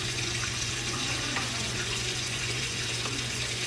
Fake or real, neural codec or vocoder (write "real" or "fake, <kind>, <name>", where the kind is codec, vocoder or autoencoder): fake, vocoder, Vocos